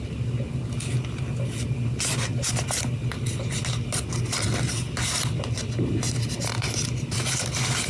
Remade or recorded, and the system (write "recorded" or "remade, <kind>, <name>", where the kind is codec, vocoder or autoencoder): recorded